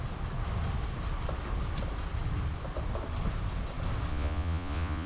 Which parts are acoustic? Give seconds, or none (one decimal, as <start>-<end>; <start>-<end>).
0.0-4.1